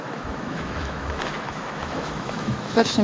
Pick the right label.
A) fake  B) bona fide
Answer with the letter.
A